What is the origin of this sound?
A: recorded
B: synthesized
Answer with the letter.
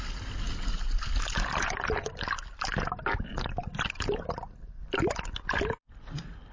A